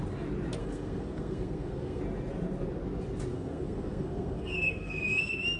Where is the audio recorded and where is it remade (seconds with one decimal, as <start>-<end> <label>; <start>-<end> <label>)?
0.0-0.6 recorded; 0.6-2.0 remade; 2.0-3.3 recorded; 3.3-5.6 remade